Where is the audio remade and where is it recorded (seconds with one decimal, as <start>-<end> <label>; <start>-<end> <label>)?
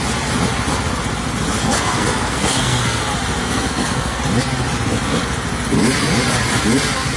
0.0-1.6 recorded; 1.6-3.0 remade; 3.0-3.4 recorded; 3.4-4.2 remade; 4.2-7.2 recorded